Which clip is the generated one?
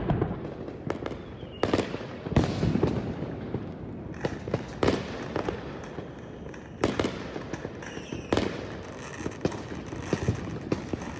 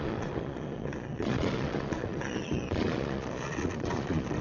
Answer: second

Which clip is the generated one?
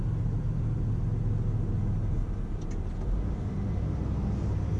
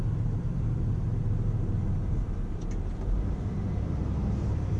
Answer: second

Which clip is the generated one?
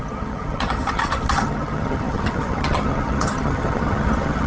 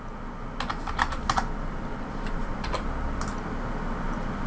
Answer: first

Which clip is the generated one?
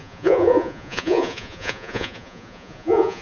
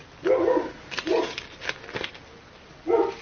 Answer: first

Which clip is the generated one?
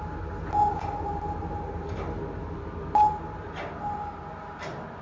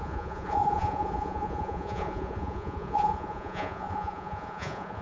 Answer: second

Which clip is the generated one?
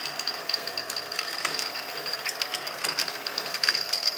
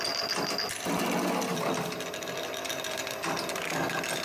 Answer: first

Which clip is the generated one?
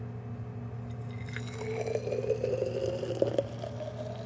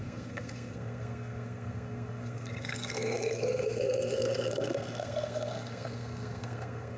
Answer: second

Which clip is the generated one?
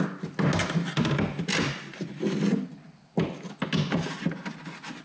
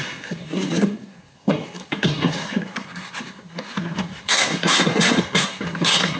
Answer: second